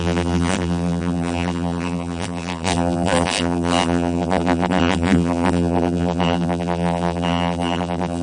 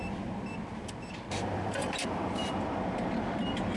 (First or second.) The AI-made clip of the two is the first